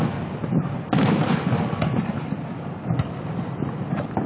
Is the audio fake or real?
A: real